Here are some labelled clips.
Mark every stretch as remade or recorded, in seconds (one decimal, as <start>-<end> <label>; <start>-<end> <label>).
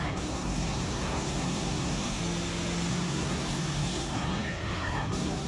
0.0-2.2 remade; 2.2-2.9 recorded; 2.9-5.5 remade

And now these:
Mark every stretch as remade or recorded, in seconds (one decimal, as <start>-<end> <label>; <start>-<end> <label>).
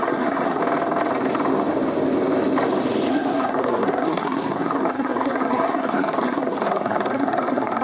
0.0-0.6 remade; 0.6-3.1 recorded; 3.1-7.8 remade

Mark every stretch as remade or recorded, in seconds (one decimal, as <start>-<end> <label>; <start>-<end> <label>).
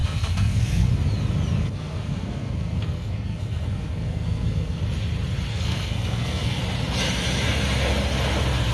0.0-0.9 remade; 0.9-1.6 recorded; 1.6-4.8 remade; 4.8-5.5 recorded; 5.5-6.6 remade; 6.6-8.7 recorded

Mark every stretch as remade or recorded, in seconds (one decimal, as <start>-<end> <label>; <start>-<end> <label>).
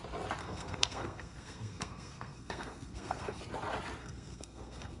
0.0-0.4 recorded; 0.4-3.4 remade; 3.4-4.0 recorded; 4.0-5.0 remade